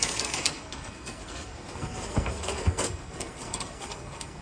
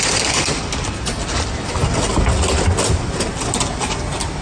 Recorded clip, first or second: second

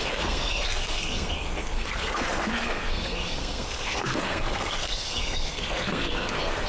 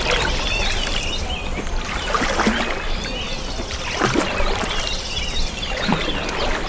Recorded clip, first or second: second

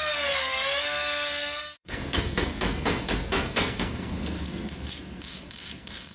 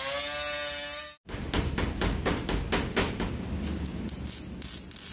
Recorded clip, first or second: second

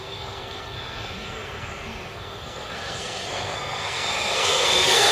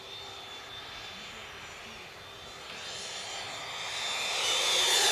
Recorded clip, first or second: second